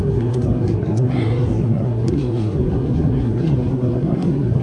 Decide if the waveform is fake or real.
fake